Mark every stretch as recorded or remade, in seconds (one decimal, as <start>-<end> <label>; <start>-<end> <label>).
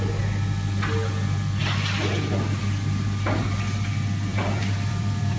0.0-4.3 recorded; 4.3-5.4 remade